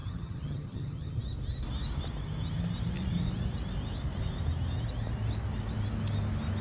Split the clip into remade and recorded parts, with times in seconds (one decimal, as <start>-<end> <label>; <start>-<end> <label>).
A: 0.0-1.2 remade; 1.2-6.6 recorded